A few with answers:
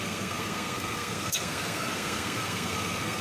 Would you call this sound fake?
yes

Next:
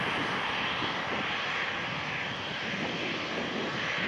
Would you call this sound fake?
no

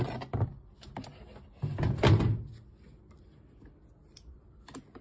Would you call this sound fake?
no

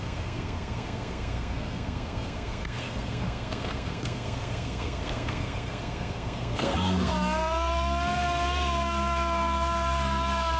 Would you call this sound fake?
yes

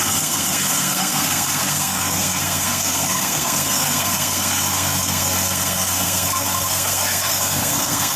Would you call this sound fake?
yes